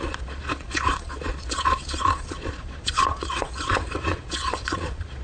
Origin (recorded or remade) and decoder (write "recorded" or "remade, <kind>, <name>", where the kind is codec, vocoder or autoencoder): remade, vocoder, Vocos